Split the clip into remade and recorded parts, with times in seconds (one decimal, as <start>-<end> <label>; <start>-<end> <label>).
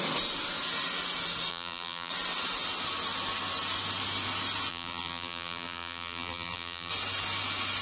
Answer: 0.0-1.5 recorded; 1.5-2.1 remade; 2.1-4.7 recorded; 4.7-6.9 remade; 6.9-7.8 recorded